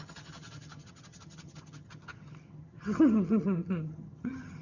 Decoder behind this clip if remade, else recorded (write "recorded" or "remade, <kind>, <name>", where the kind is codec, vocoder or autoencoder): remade, vocoder, HiFi-GAN